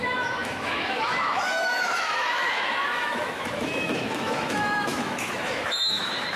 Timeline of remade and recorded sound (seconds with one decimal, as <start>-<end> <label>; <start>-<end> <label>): 0.0-6.4 remade